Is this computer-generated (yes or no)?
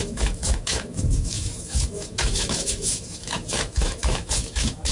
yes